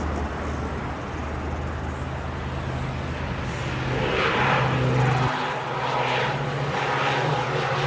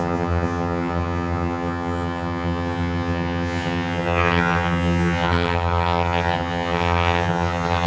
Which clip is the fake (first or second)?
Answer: second